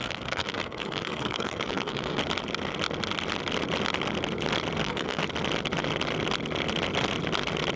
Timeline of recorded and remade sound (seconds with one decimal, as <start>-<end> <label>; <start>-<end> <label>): 0.0-2.2 remade; 2.2-4.8 recorded; 4.8-5.2 remade; 5.2-7.8 recorded